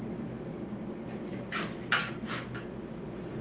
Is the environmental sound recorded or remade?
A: recorded